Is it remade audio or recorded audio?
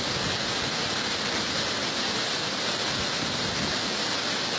recorded